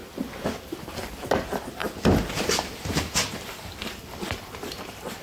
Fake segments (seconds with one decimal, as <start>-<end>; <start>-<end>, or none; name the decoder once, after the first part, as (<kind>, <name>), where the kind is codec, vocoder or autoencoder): 0.0-1.2 (vocoder, BigVGAN v2); 1.8-3.6